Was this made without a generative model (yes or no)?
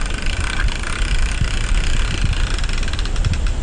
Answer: yes